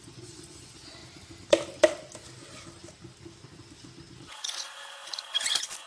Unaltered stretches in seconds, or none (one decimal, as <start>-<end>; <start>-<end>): 1.0-4.3